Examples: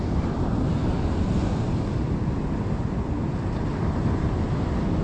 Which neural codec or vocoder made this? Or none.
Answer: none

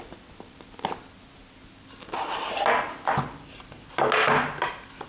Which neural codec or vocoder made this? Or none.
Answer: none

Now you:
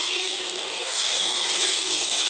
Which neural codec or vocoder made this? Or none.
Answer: codec, DAC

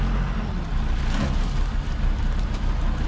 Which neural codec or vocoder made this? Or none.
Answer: none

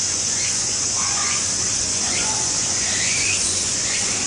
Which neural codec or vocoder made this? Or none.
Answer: vocoder, Vocos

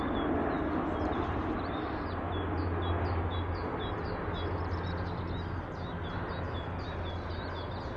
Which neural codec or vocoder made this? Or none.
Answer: none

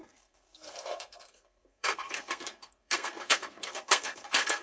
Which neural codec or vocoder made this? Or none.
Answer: codec, SNAC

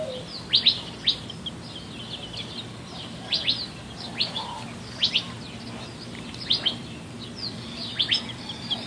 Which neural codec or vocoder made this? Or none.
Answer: none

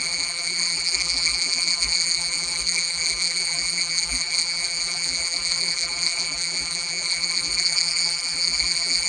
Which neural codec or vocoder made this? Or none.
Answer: vocoder, BigVGAN v2